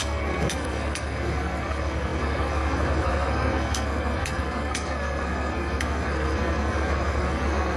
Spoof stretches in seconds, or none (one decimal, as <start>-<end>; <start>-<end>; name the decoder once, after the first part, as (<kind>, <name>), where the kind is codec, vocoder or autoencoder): 0.0-7.8 (codec, SNAC)